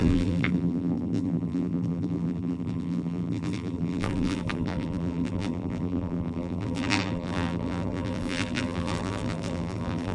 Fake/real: fake